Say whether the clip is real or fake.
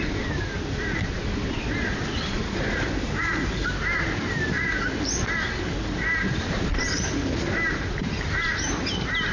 fake